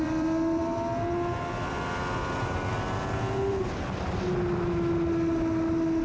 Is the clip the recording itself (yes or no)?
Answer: yes